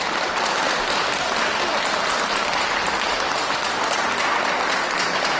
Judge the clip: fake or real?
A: real